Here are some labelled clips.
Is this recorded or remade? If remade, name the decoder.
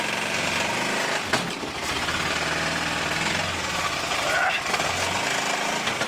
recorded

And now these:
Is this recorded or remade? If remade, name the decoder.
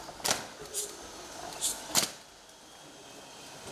recorded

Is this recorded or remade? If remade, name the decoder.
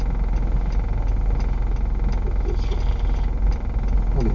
recorded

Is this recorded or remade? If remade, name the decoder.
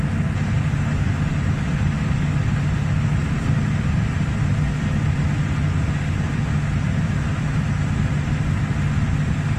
recorded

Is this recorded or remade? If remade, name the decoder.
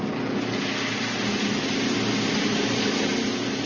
recorded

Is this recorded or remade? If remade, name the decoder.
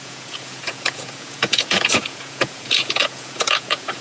remade, vocoder, Vocos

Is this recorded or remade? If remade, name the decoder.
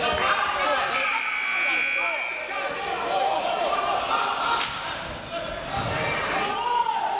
recorded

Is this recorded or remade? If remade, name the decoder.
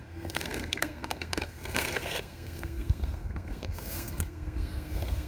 remade, codec, SNAC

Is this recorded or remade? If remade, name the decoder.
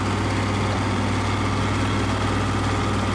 recorded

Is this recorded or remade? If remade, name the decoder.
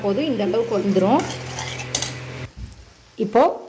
recorded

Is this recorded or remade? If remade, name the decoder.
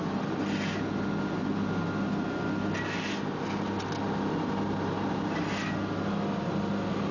recorded